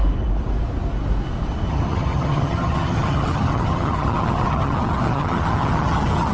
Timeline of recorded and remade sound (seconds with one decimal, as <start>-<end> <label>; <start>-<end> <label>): 0.0-1.7 recorded; 1.7-6.3 remade